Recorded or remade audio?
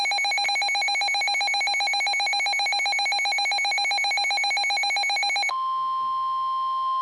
recorded